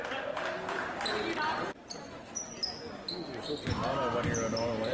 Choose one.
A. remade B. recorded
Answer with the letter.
B